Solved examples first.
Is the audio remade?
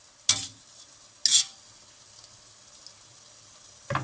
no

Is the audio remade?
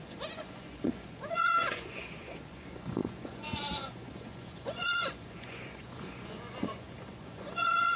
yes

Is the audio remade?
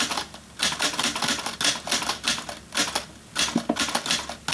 no